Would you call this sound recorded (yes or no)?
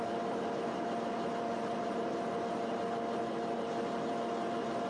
yes